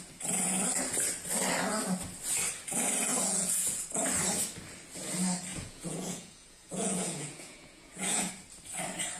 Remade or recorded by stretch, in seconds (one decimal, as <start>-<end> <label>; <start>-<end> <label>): 0.0-3.1 recorded; 3.1-3.8 remade; 3.8-5.5 recorded; 5.5-8.3 remade; 8.3-9.2 recorded